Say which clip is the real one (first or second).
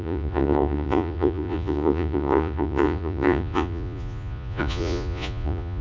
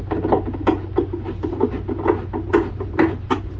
second